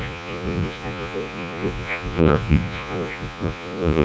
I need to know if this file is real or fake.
fake